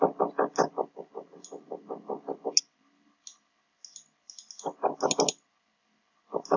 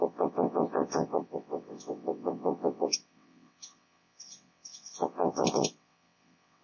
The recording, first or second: first